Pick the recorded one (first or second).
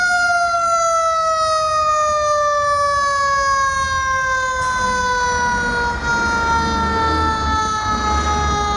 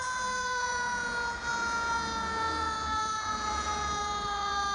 first